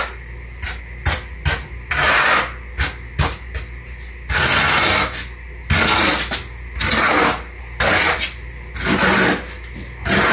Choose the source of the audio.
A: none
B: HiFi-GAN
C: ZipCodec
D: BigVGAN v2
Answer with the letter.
A